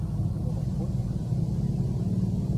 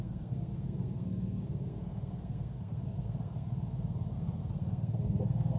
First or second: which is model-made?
second